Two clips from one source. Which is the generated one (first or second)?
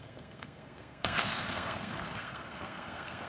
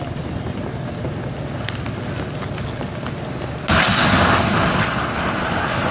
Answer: first